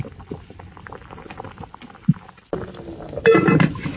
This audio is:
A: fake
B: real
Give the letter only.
B